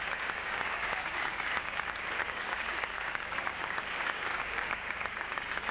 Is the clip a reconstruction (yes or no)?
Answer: yes